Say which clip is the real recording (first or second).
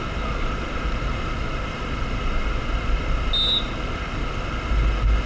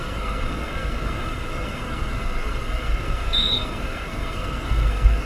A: first